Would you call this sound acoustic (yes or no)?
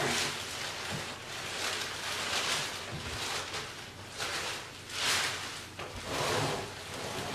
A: yes